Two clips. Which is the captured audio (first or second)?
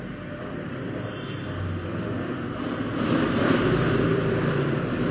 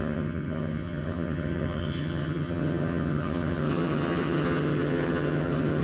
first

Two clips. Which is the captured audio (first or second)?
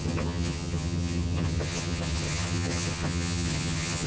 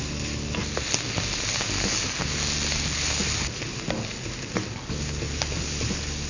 second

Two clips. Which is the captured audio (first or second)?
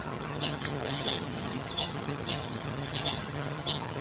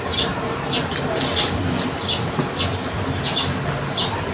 second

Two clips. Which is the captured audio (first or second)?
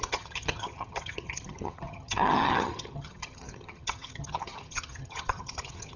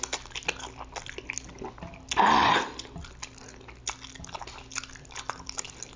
second